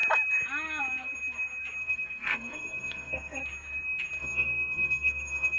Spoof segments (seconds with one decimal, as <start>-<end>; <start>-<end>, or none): 1.8-3.4; 4.2-5.6